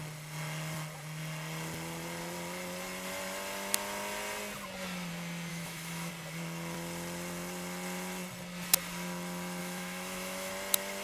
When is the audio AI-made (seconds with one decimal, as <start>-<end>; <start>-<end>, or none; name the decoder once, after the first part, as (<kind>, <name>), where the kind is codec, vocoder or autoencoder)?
5.5-6.1 (autoencoder, DAC-VAE); 9.6-10.5